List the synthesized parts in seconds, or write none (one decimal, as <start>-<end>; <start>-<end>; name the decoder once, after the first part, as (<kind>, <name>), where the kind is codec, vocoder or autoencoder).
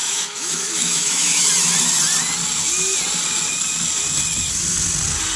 0.0-1.5 (autoencoder, DAC-VAE)